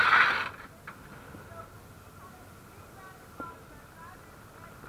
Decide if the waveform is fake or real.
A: real